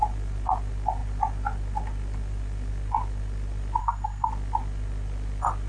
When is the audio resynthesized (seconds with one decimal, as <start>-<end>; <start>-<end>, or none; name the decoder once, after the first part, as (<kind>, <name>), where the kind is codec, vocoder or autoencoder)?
3.8-4.3 (codec, SNAC)